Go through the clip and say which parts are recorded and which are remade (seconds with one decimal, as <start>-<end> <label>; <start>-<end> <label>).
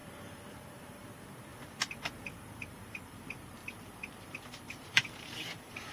0.0-5.9 remade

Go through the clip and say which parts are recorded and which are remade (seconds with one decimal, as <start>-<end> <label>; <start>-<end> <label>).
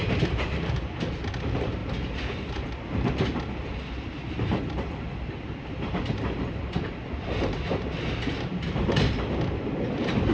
0.0-10.3 recorded